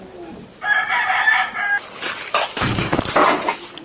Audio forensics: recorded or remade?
recorded